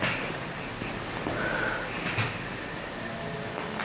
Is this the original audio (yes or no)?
yes